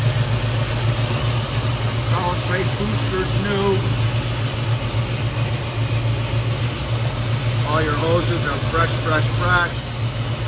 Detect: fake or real real